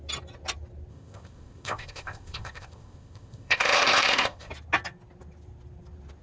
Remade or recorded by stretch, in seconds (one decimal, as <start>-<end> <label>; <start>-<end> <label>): 0.0-0.9 recorded; 0.9-4.5 remade; 4.5-6.2 recorded